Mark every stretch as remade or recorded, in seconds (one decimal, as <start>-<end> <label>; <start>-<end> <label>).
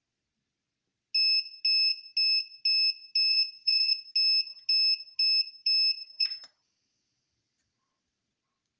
0.0-3.3 recorded; 3.3-4.1 remade; 4.1-6.0 recorded; 6.0-8.3 remade; 8.3-8.8 recorded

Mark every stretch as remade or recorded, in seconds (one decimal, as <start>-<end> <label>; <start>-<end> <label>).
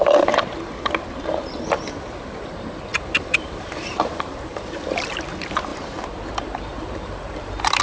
0.0-2.9 recorded; 2.9-4.6 remade; 4.6-5.7 recorded; 5.7-7.8 remade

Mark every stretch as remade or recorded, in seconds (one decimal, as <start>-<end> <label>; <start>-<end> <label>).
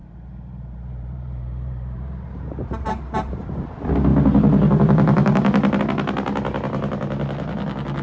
0.0-3.4 remade; 3.4-8.0 recorded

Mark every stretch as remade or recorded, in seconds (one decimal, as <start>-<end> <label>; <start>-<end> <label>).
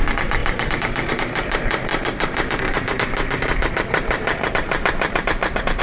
0.0-5.8 remade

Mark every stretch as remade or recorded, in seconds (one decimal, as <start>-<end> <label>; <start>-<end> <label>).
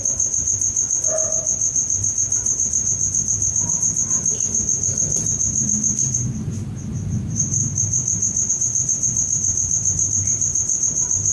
0.0-0.7 remade; 0.7-1.4 recorded; 1.4-11.3 remade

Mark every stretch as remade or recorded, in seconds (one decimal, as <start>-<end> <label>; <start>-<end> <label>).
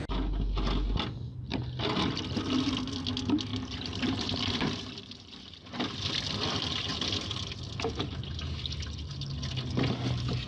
0.0-3.5 recorded; 3.5-5.8 remade; 5.8-10.5 recorded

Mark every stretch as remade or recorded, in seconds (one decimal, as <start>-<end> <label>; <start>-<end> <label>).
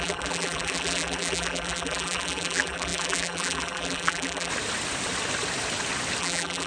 0.0-4.5 remade; 4.5-6.2 recorded; 6.2-6.7 remade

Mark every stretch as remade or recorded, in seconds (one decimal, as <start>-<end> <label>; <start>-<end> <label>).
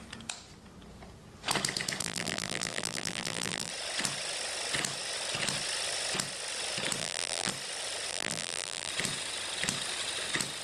0.0-2.0 recorded; 2.0-3.7 remade; 3.7-7.0 recorded; 7.0-7.5 remade; 7.5-8.1 recorded; 8.1-8.9 remade; 8.9-10.6 recorded